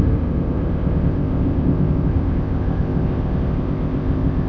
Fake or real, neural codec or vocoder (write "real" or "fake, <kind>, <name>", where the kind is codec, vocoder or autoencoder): fake, codec, ZipCodec